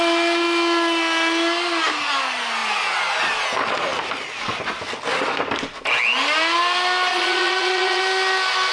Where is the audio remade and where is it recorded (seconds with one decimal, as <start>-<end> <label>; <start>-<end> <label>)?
0.0-7.1 recorded; 7.1-8.0 remade; 8.0-8.7 recorded